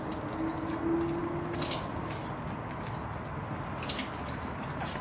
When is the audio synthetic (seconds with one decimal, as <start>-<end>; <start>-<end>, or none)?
none